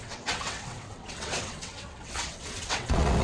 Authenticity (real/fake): fake